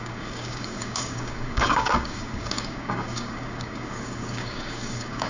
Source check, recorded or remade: remade